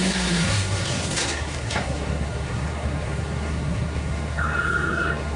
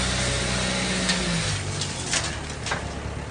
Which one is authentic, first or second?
second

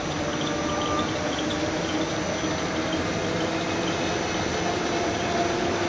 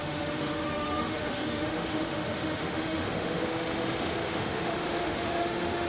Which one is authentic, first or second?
first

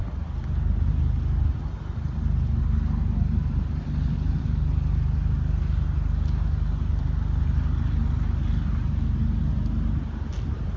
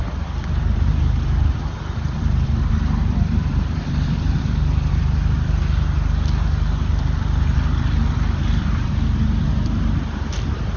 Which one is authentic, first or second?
first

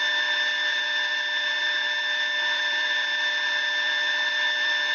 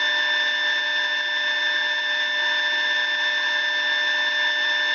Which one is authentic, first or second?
second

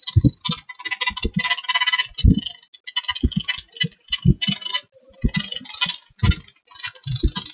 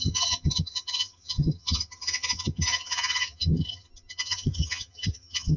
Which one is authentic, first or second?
first